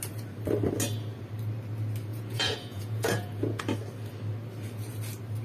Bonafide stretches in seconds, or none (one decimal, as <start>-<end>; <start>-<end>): 0.0-2.1; 3.6-5.4